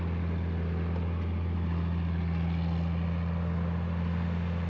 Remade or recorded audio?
recorded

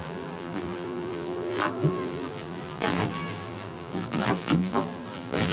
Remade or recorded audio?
remade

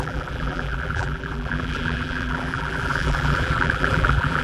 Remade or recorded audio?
remade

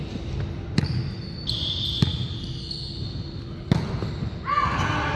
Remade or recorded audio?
recorded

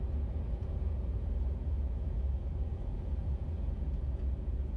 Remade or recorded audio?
remade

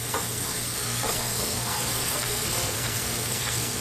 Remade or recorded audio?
remade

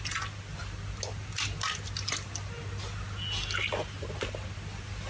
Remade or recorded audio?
recorded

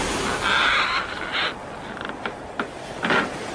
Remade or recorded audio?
recorded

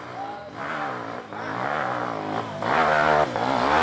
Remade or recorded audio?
recorded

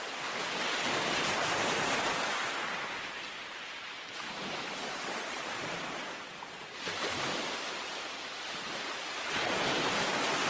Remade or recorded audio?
remade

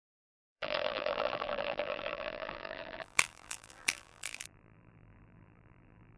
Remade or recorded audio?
remade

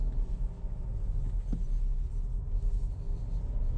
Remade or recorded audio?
recorded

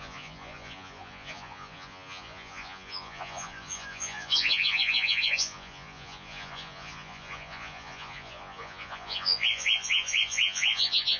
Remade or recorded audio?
remade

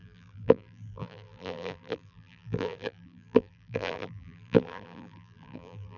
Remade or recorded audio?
remade